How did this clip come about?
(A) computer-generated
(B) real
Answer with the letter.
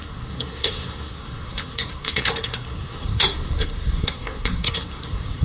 A